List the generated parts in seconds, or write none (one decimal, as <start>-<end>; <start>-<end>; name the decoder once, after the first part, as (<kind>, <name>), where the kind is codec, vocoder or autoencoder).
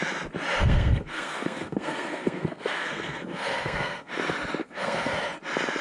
0.6-4.1 (codec, SNAC); 4.6-5.1